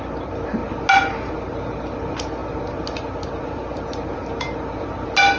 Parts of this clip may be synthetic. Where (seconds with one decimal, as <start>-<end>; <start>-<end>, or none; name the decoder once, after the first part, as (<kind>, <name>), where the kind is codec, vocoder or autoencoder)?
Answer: none